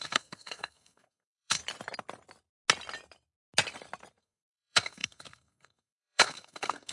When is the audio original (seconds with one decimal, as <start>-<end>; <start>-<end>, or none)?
1.6-4.2